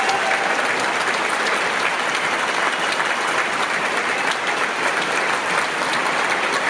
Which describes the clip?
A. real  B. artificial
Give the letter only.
A